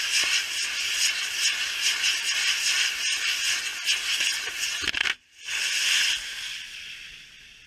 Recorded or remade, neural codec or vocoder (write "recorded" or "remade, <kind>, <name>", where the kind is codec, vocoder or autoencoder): recorded